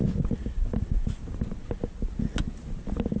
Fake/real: real